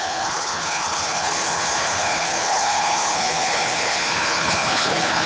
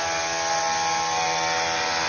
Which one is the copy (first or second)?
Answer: first